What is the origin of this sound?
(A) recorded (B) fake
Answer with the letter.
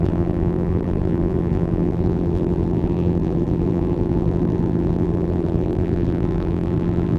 B